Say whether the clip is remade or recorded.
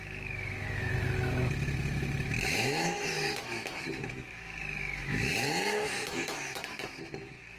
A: remade